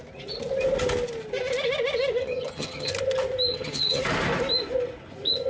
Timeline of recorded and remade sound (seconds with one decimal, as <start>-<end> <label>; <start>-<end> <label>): 0.0-2.2 recorded; 2.2-2.9 remade; 2.9-3.5 recorded; 3.5-4.0 remade; 4.0-5.5 recorded